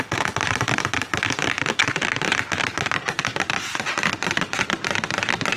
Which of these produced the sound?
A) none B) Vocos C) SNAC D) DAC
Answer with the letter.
A